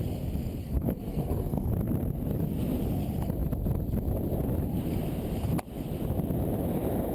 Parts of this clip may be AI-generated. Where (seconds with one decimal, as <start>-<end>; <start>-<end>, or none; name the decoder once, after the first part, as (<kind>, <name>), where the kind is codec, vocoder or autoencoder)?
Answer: 0.6-1.7 (codec, SNAC)